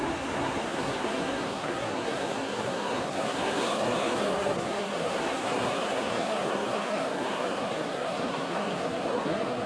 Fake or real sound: fake